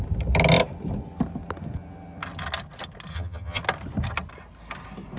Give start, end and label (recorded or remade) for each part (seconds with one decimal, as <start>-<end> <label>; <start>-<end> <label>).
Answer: 0.0-3.1 recorded; 3.1-3.6 remade; 3.6-5.2 recorded